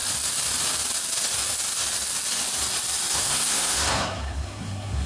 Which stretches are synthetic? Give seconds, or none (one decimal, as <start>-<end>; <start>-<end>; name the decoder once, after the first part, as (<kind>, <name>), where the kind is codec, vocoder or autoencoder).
3.1-5.1 (codec, SNAC)